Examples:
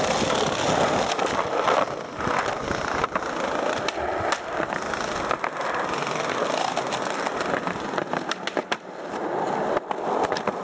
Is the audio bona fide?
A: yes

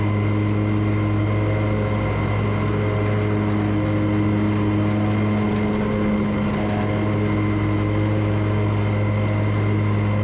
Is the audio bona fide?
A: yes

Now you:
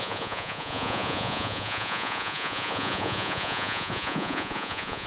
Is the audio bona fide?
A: no